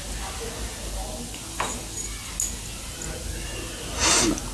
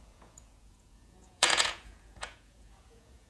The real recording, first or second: first